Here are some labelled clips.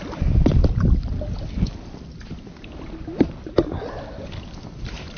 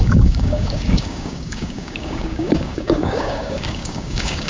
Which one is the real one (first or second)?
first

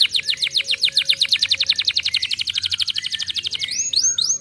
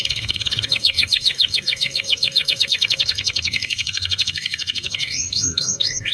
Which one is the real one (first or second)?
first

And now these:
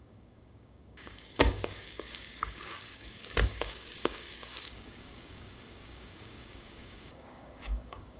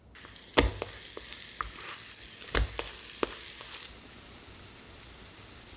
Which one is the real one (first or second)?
second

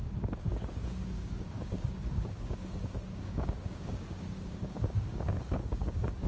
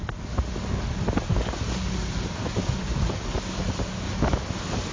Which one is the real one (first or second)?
second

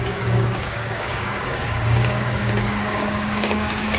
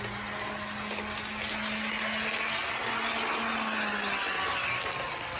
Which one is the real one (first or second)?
second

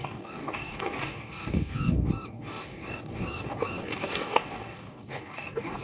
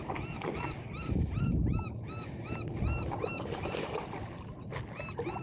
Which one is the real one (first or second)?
second